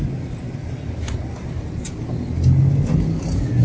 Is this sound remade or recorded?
recorded